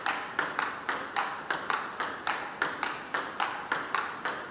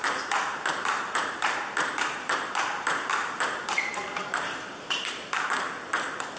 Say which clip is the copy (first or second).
second